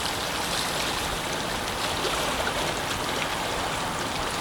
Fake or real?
real